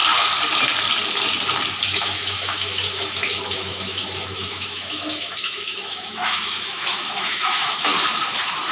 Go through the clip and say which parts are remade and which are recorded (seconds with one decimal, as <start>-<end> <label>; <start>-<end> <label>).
0.0-1.8 recorded; 1.8-7.9 remade; 7.9-8.7 recorded